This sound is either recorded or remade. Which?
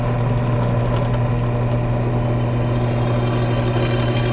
recorded